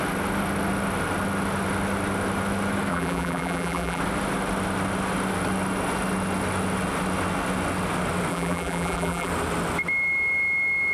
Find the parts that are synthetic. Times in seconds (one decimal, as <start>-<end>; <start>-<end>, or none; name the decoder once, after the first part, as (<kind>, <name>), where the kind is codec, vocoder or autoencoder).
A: 2.9-4.0 (vocoder, BigVGAN v2); 8.3-9.3